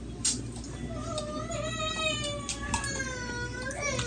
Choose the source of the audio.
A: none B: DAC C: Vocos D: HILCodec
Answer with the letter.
A